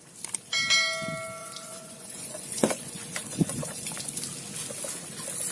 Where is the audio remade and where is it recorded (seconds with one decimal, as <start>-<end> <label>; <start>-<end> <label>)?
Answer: 0.0-1.4 recorded; 1.4-4.2 remade; 4.2-5.5 recorded